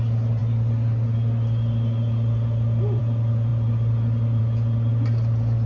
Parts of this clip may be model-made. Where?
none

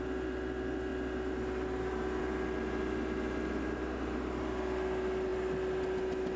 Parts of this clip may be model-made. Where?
none

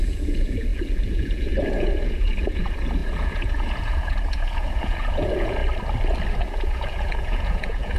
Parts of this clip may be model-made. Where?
0.0-5.6; 6.3-8.0

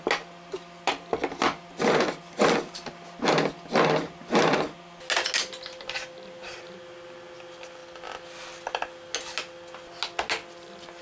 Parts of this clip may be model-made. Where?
none

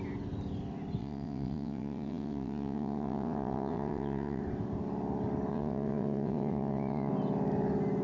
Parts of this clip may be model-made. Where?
1.0-4.4; 5.5-7.1

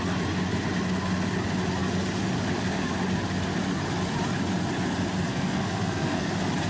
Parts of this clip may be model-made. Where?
5.3-6.3

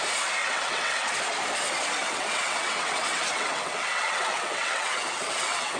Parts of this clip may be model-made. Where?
0.4-1.1; 2.0-5.8

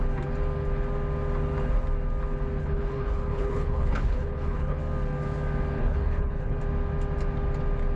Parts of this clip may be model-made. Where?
2.6-4.8; 5.8-6.6